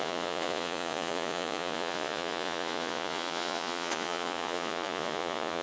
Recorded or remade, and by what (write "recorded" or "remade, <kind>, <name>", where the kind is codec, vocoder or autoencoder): remade, vocoder, Vocos